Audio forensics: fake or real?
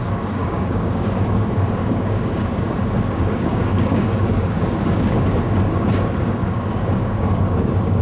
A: fake